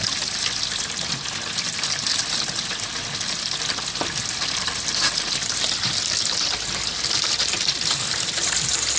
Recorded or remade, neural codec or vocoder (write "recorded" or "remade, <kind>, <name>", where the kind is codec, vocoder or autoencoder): recorded